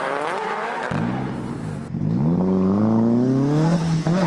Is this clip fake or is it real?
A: real